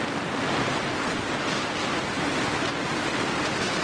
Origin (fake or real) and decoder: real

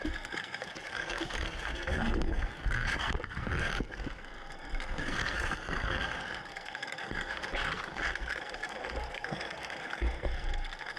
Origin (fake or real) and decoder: fake, codec, SNAC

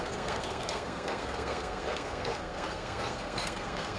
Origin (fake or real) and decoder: fake, codec, SNAC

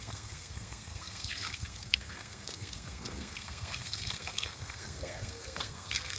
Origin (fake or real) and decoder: fake, codec, SNAC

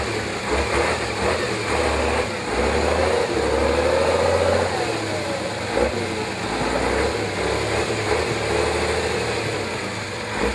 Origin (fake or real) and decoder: real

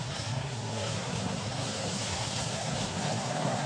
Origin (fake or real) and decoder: fake, codec, SNAC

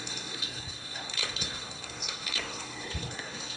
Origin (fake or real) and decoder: fake, codec, SNAC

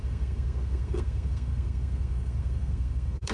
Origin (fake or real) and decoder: fake, codec, SNAC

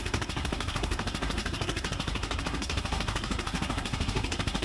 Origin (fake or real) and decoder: fake, codec, SNAC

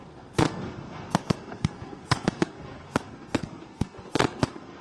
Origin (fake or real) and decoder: fake, codec, SNAC